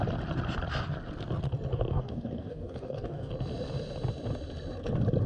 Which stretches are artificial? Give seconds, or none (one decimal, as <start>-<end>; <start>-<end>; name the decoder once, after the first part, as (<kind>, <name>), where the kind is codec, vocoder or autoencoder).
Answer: 1.9-3.3 (codec, DAC)